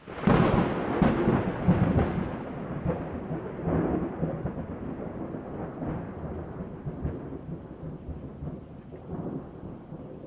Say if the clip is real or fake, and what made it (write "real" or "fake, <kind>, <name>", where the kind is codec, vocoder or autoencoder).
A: real